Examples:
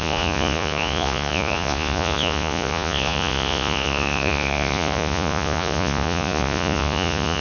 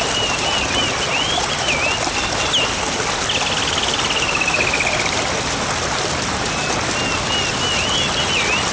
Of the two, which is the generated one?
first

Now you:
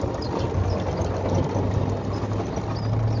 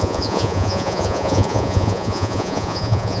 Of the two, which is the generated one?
second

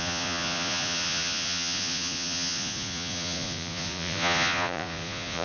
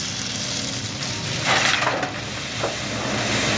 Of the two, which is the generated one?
first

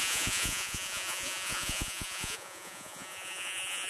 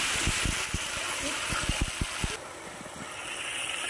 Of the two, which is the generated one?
first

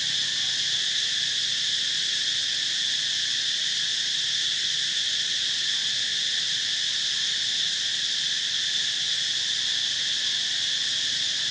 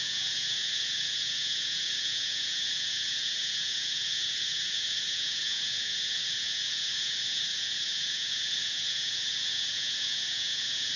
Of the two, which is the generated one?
second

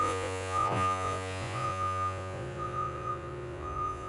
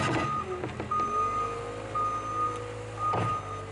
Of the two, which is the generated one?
first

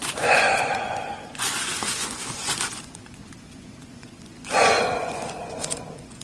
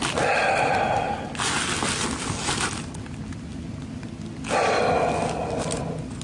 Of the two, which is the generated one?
first